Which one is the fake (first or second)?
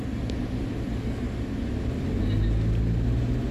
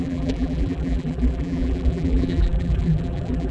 second